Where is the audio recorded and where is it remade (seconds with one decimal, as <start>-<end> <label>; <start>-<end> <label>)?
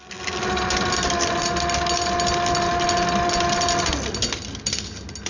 0.0-5.3 recorded